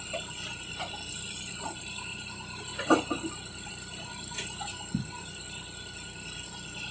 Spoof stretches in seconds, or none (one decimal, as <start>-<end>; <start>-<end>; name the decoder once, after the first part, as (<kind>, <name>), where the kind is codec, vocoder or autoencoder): none

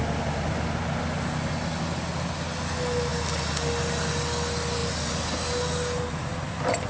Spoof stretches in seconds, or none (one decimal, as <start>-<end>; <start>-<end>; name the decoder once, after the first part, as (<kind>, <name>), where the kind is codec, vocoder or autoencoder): none

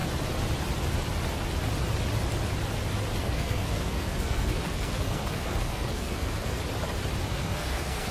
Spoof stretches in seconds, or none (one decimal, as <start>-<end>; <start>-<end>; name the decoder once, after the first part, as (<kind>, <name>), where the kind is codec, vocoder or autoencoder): 3.2-6.6 (codec, SNAC); 7.3-8.1